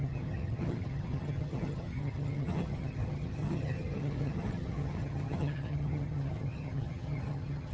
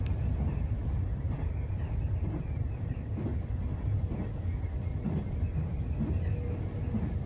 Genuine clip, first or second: second